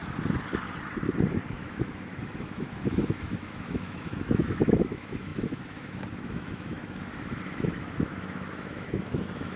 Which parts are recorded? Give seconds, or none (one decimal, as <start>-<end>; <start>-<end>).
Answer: 0.0-1.5